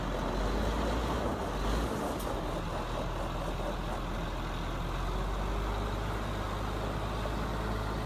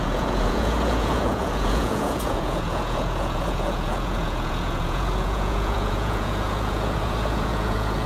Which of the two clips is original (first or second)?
first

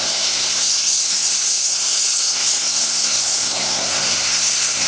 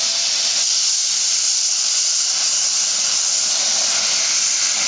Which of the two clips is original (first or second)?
second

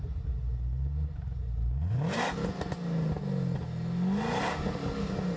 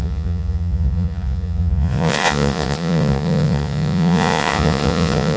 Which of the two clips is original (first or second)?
first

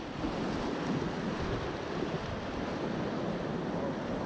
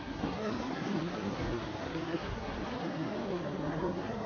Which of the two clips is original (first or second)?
first